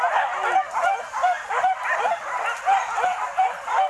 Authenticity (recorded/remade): recorded